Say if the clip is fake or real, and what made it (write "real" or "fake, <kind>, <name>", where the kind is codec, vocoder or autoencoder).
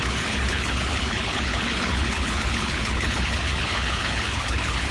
fake, codec, HILCodec